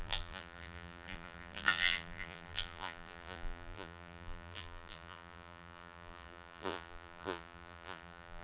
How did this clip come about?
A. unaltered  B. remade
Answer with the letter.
B